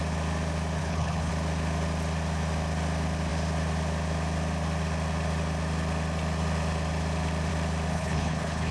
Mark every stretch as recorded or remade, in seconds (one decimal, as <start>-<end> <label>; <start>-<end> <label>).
0.0-0.8 recorded; 0.8-1.3 remade; 1.3-7.9 recorded; 7.9-8.7 remade